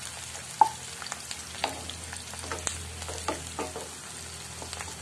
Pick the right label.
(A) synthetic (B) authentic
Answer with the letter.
B